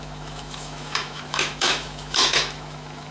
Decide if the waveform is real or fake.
fake